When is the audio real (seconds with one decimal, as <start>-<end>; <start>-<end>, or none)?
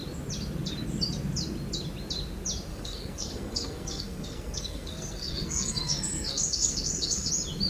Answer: 0.0-2.7; 7.3-7.7